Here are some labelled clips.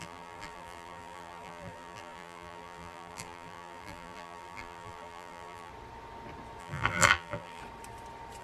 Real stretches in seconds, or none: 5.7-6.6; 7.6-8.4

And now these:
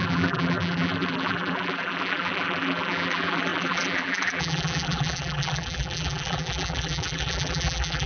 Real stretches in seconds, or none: none

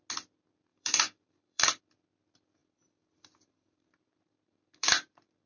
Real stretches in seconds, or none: 0.0-0.7; 1.8-2.6

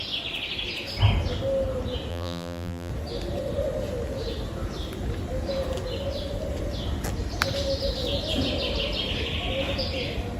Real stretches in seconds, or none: 0.0-2.1; 2.9-10.4

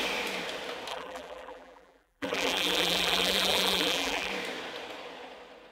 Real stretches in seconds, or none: 0.0-0.9; 4.3-5.7

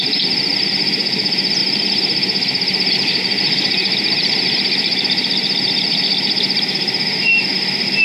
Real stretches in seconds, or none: 0.0-1.6; 3.2-3.8; 7.5-8.0

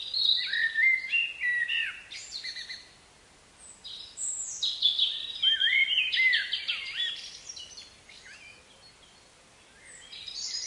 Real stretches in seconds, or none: 0.0-5.3; 7.1-10.7

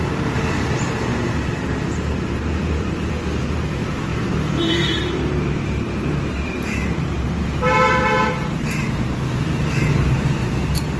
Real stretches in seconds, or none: 4.1-4.6